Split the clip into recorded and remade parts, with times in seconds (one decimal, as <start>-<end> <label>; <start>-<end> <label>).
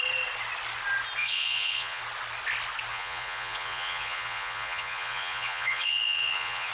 0.0-1.2 recorded; 1.2-2.0 remade; 2.0-2.9 recorded; 2.9-6.7 remade